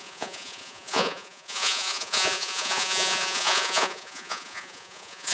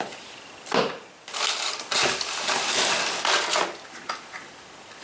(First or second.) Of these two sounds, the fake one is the first